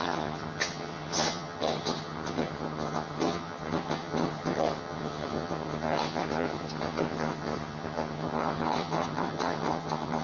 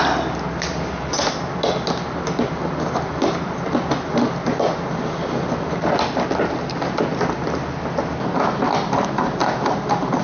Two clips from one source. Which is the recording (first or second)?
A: second